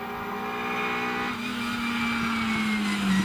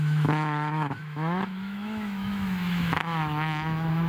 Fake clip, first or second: second